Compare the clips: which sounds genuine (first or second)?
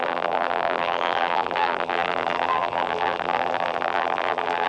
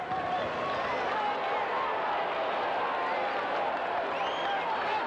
second